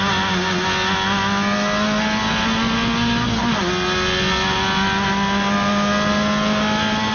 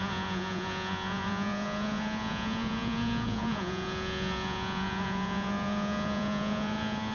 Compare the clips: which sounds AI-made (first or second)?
second